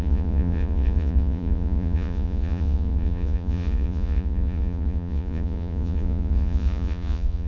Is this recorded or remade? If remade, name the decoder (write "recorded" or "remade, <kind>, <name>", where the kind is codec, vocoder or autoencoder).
remade, vocoder, Vocos